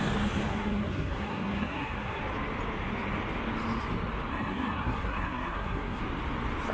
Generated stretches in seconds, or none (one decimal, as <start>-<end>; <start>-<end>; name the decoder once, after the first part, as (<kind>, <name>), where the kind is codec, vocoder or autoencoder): 0.5-2.2 (codec, SNAC); 4.3-6.0